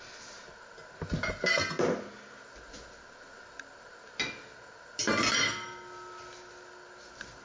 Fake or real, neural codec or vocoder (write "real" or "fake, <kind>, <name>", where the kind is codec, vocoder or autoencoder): real